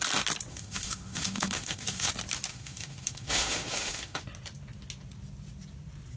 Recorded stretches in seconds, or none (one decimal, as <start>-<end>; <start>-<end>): 0.0-0.5; 2.1-2.5; 4.2-6.2